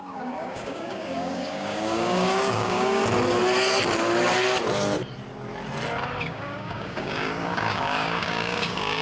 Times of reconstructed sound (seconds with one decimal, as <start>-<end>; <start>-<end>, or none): 0.0-3.0; 6.2-9.0